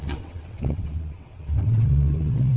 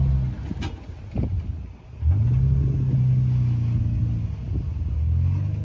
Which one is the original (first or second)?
second